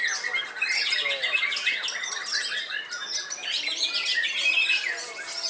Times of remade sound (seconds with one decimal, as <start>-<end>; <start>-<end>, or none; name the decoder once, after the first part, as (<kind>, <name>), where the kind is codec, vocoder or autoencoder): none